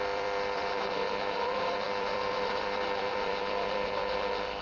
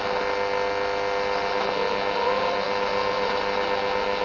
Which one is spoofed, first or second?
first